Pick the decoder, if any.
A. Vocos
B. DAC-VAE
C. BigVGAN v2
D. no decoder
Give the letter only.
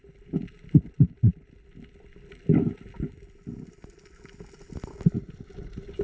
D